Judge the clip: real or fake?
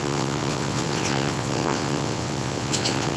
fake